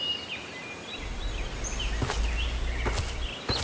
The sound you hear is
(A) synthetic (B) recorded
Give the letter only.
B